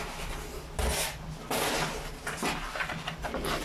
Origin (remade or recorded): recorded